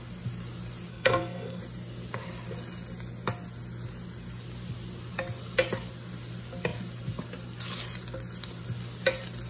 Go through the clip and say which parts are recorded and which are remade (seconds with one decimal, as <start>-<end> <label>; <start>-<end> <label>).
0.0-0.9 recorded; 0.9-1.6 remade; 1.6-9.5 recorded